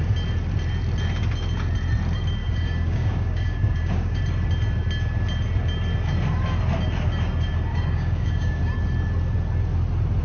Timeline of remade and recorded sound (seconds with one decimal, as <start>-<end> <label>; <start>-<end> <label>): 0.0-2.4 recorded; 2.4-4.2 remade; 4.2-7.7 recorded; 7.7-8.6 remade; 8.6-10.2 recorded